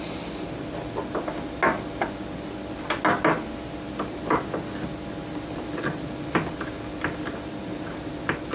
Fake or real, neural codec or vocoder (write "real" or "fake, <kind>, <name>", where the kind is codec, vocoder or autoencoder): real